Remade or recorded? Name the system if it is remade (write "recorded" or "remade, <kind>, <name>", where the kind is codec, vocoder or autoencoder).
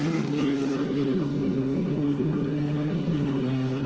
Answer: remade, codec, SNAC